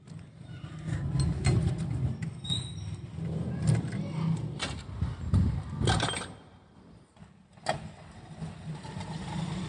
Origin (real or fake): real